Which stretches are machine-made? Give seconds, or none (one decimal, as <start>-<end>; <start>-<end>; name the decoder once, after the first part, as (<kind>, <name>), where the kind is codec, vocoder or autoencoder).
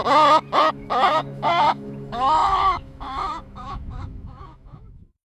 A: 0.7-5.4 (autoencoder, DAC-VAE)